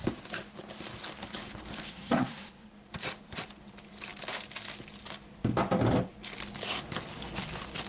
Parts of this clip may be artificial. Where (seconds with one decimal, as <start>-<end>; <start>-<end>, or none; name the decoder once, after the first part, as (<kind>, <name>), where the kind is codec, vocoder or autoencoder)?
1.9-2.7 (codec, SNAC)